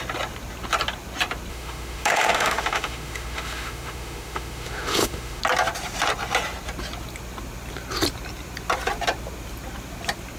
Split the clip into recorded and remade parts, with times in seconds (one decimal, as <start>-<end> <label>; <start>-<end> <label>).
0.0-1.5 recorded; 1.5-5.4 remade; 5.4-10.4 recorded